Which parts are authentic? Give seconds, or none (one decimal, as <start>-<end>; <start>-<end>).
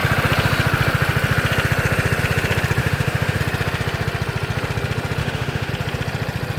0.0-2.8; 3.4-5.2; 5.7-6.6